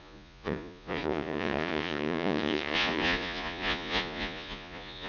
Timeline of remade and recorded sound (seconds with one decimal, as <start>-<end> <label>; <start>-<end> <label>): 0.0-5.1 remade